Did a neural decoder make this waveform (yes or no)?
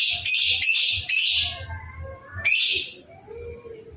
no